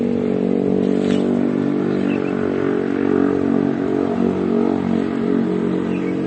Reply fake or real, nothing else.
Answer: real